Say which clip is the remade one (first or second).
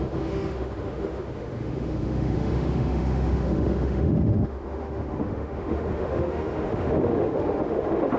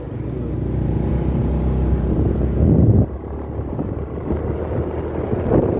first